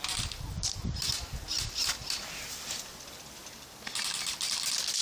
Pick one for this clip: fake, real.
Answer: real